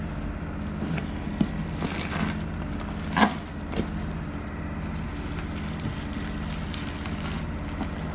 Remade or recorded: recorded